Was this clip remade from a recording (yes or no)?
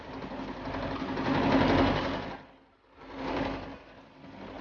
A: no